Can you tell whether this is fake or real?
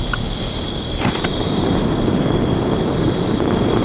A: real